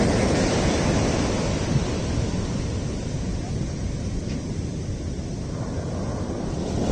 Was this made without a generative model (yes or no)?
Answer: yes